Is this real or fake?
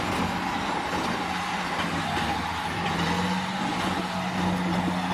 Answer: real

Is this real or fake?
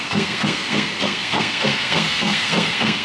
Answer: fake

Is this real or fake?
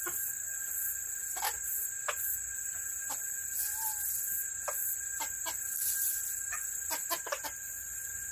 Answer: real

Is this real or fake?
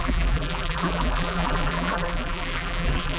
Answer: fake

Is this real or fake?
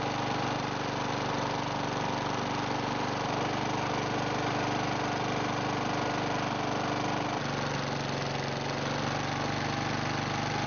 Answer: real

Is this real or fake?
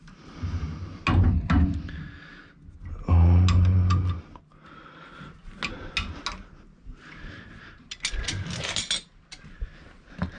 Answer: real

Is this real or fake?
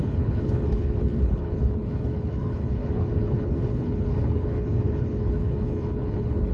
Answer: fake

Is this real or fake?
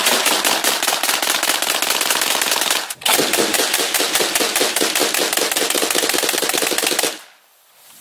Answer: real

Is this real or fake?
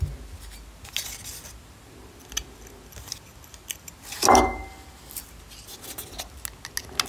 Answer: real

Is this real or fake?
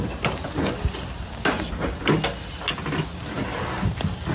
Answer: real